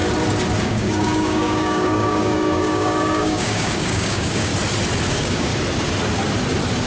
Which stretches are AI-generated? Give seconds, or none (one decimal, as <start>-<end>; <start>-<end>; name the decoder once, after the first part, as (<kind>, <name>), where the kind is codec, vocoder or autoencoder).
0.6-4.5 (codec, DAC); 5.1-5.5